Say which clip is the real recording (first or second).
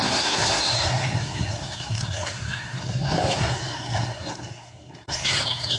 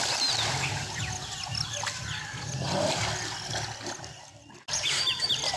second